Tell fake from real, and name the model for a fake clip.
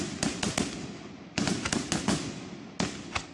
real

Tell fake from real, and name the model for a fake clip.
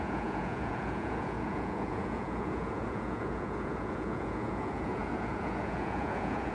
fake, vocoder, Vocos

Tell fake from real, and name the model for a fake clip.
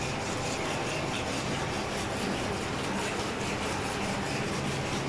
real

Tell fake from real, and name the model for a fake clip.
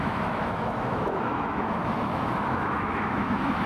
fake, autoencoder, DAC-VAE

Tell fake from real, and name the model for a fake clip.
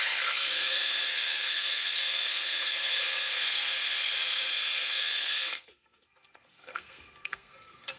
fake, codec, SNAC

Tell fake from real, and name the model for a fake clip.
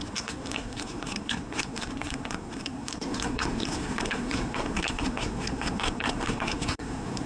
fake, codec, SNAC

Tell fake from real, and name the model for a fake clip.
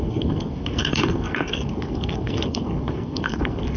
fake, codec, SNAC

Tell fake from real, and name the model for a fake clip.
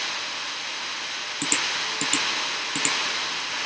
real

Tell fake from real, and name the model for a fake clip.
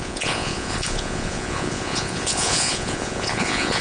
fake, vocoder, Vocos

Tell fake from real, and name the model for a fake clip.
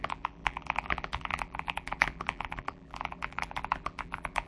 fake, vocoder, BigVGAN v2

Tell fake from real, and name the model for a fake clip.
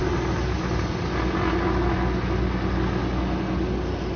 real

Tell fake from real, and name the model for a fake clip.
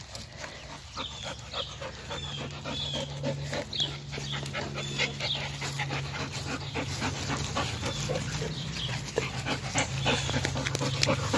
real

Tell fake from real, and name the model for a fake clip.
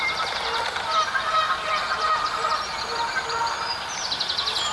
real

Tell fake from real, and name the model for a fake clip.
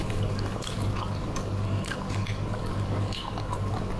fake, codec, DAC